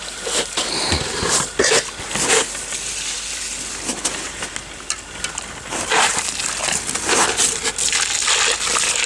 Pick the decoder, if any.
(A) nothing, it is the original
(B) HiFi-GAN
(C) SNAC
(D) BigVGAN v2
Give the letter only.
A